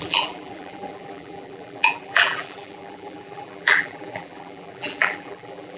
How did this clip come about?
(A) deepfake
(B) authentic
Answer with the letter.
A